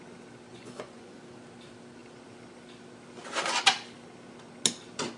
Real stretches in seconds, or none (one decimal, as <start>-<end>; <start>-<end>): 0.0-0.5; 1.2-5.2